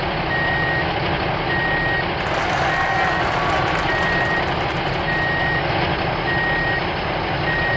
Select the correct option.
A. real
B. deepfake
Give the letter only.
A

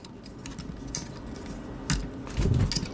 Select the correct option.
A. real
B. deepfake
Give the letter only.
A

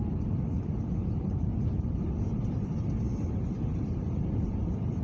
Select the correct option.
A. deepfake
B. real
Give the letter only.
A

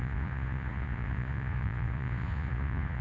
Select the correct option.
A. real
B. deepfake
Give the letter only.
B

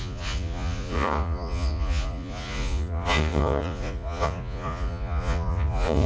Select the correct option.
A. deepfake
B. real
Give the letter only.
A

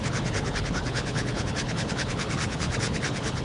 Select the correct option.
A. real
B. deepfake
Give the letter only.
B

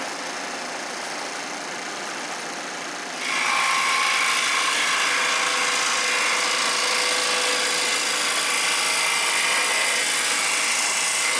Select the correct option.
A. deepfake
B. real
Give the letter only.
B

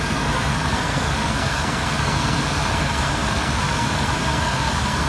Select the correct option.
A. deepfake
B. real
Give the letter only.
A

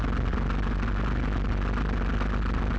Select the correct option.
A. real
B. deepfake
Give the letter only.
A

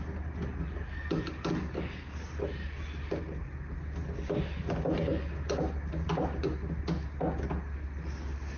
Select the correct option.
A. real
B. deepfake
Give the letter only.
A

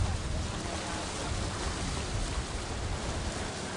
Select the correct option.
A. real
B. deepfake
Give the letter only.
A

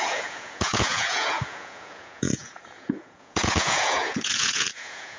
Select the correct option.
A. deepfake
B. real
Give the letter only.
A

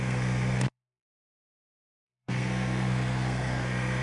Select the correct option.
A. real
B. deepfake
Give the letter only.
B